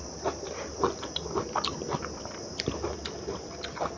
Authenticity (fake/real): real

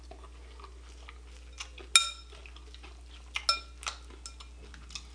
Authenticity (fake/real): real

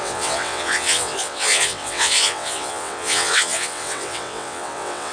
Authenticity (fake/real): fake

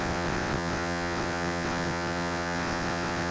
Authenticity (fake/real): fake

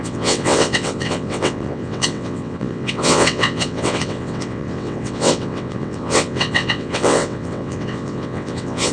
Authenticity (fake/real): fake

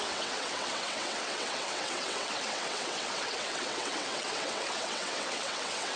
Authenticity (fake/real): fake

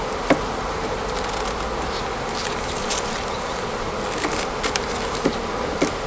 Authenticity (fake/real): real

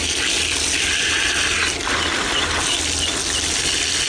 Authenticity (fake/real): real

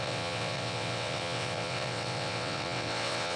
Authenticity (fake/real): fake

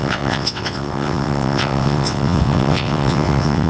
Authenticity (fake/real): fake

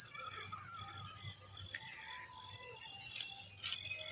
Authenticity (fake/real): real